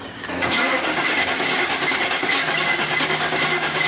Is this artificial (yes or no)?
yes